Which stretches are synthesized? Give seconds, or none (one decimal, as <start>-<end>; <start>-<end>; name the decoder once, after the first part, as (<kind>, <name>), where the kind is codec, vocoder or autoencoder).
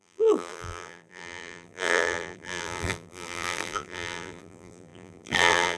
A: 0.0-5.8 (vocoder, BigVGAN v2)